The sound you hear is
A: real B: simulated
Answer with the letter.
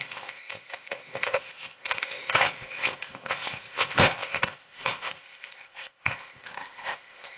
B